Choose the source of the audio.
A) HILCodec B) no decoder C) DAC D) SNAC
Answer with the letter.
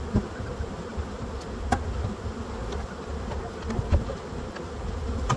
B